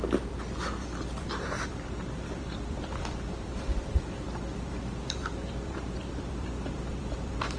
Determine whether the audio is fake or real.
fake